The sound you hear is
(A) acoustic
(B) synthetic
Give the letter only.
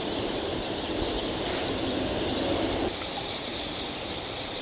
B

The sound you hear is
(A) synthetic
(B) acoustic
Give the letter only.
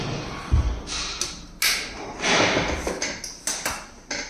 B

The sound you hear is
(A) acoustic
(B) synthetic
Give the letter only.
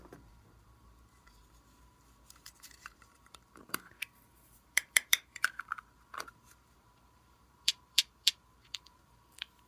B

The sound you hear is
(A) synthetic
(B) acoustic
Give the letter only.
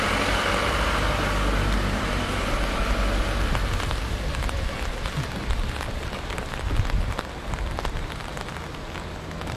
B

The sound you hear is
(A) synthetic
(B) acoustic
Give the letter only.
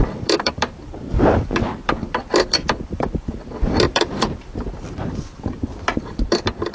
A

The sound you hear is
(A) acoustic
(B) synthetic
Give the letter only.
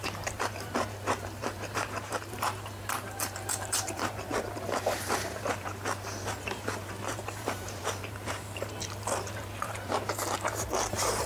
B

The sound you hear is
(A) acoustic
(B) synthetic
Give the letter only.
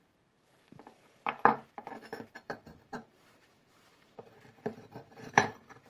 B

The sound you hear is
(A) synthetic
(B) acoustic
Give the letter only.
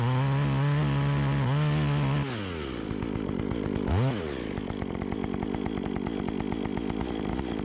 B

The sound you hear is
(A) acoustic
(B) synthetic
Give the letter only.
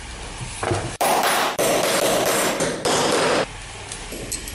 A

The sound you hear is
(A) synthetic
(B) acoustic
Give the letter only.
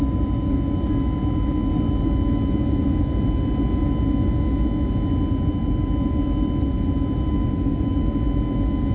B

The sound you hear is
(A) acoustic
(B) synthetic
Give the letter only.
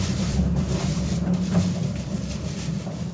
B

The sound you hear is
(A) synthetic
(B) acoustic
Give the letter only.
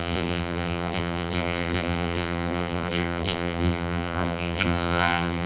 A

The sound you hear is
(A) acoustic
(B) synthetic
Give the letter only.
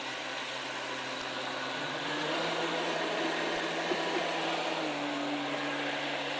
A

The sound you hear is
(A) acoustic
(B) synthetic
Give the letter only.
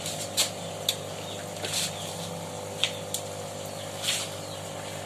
A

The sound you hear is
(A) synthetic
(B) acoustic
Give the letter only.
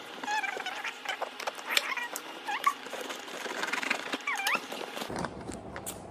A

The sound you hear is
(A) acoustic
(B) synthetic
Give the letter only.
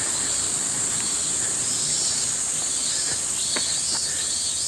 B